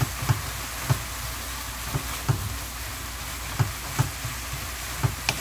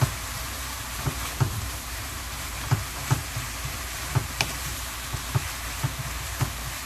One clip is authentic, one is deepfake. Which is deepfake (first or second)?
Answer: second